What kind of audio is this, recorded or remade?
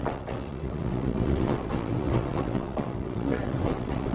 remade